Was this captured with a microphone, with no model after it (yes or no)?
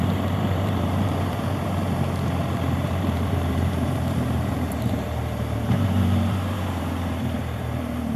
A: no